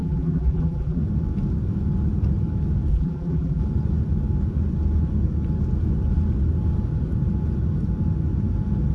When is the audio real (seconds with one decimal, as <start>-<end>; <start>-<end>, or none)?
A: 1.0-2.9; 3.6-8.9

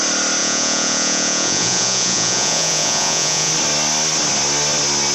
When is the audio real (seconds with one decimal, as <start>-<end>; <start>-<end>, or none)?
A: 0.0-0.4; 3.5-5.1